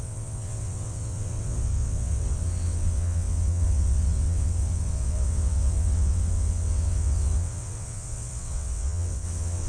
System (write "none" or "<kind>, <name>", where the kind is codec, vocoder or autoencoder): vocoder, WaveNeXt